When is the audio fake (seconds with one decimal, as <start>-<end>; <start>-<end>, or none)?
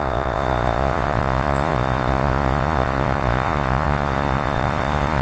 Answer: 0.0-5.2